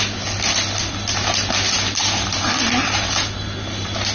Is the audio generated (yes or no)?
no